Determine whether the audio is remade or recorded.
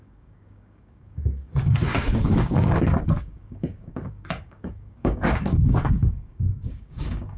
remade